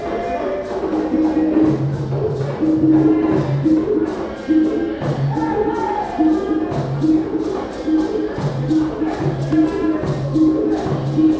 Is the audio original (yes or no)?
yes